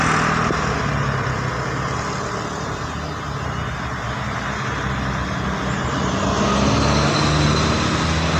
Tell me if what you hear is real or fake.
real